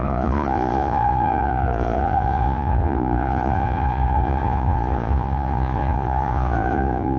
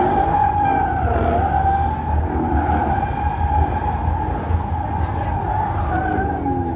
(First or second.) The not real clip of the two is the first